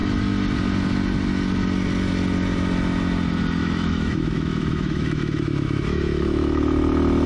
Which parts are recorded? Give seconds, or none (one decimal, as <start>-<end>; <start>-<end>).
0.0-3.6; 6.6-7.3